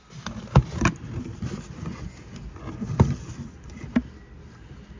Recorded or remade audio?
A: recorded